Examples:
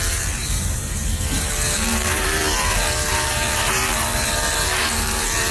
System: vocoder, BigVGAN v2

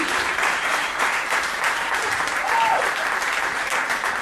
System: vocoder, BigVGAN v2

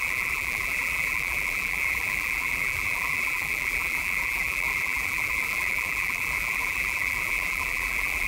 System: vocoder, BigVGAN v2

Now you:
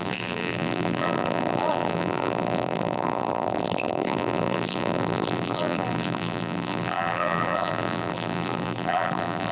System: vocoder, BigVGAN v2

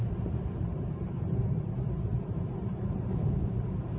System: vocoder, BigVGAN v2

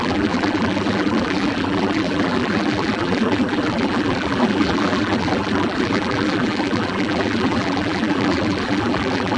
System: vocoder, BigVGAN v2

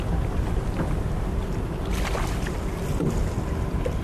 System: none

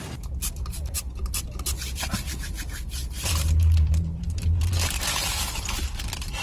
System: vocoder, BigVGAN v2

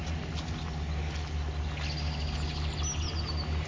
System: none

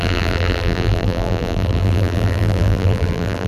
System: vocoder, BigVGAN v2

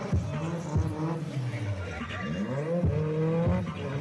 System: none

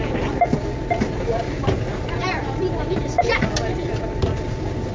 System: none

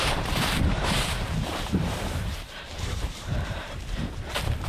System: vocoder, BigVGAN v2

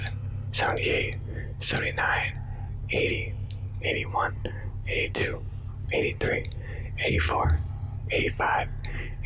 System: none